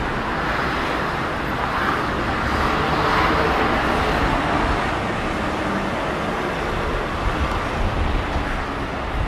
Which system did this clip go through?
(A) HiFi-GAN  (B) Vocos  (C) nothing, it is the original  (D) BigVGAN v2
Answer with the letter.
C